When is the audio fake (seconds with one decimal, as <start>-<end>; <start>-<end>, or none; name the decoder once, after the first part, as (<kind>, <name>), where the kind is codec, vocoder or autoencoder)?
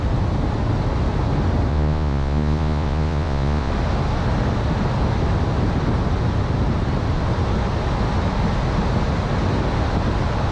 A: 1.7-3.7 (vocoder, Vocos)